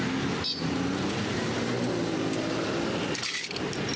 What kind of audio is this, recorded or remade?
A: recorded